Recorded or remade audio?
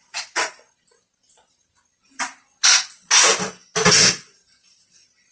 recorded